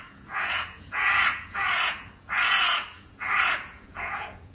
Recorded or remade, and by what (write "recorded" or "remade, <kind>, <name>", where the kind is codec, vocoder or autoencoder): remade, vocoder, Vocos